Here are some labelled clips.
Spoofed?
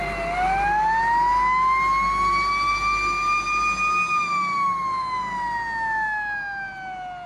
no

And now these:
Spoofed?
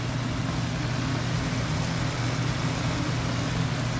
no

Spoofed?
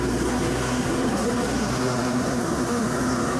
yes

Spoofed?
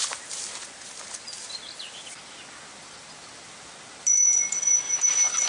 no